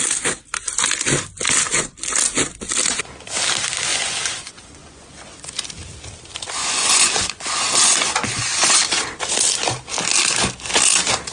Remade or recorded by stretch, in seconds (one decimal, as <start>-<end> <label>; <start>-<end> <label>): 0.0-3.9 recorded; 3.9-5.5 remade; 5.5-6.6 recorded; 6.6-8.8 remade; 8.8-11.3 recorded